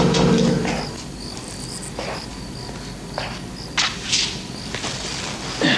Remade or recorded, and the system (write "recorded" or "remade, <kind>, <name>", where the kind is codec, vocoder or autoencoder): recorded